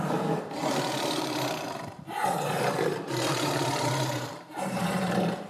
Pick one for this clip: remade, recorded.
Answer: remade